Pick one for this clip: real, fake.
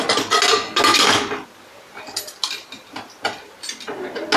real